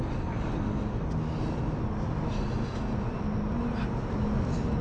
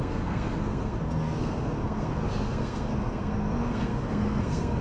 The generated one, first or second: second